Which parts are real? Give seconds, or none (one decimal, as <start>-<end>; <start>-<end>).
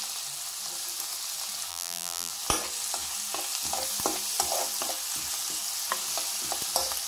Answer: 0.0-1.7; 2.3-7.1